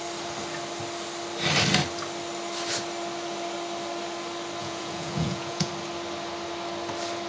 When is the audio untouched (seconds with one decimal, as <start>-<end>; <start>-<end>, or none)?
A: 0.0-4.6; 5.7-7.3

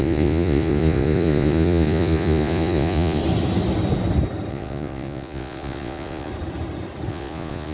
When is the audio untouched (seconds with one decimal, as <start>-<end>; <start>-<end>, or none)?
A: 3.2-4.5; 6.3-7.1

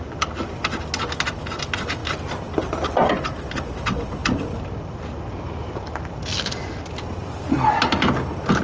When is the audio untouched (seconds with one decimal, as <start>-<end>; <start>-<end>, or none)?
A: 0.0-4.2; 5.0-8.6

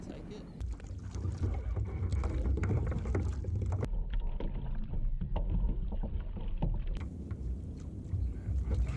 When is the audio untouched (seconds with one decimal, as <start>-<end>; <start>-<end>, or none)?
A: 0.0-9.0

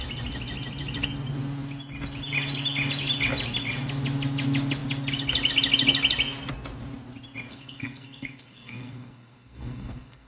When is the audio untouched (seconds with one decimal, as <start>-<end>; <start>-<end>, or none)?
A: 0.0-7.5